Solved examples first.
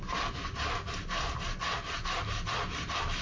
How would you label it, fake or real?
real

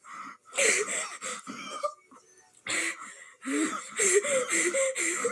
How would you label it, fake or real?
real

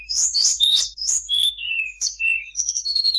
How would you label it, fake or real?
fake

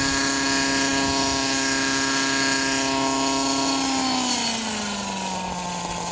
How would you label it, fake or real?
real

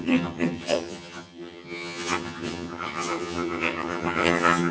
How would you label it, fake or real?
fake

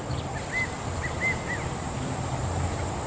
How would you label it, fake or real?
real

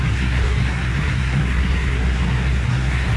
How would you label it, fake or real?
fake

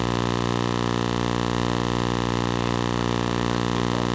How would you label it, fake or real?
real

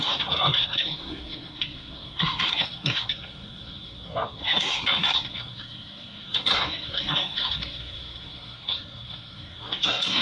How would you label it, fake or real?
fake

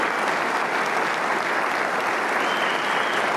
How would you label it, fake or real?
real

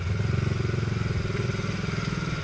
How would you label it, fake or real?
real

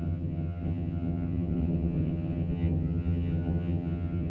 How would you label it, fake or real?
fake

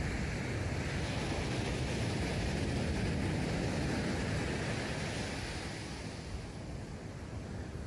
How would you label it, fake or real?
real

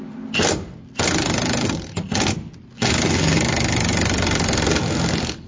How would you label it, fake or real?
real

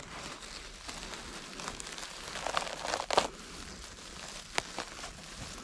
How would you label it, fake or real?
real